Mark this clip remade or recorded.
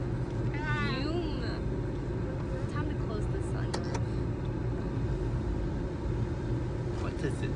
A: recorded